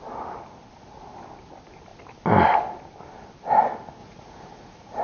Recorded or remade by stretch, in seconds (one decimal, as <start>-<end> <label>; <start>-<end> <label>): 0.0-4.0 recorded; 4.0-5.0 remade